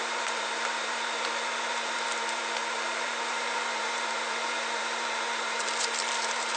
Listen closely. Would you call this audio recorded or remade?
remade